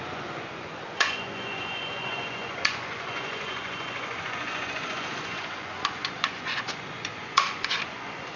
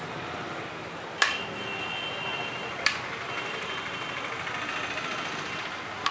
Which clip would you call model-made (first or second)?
first